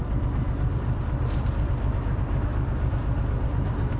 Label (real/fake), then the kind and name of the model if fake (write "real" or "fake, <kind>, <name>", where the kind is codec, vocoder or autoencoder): real